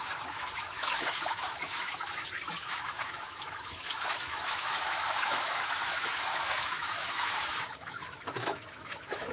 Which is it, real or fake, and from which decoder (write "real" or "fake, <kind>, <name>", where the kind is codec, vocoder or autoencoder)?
fake, autoencoder, DAC-VAE